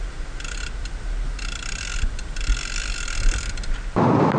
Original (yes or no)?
yes